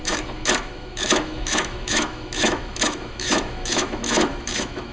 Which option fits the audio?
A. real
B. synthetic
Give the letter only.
B